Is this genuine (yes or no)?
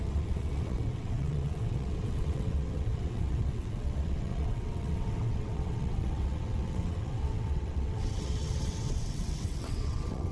no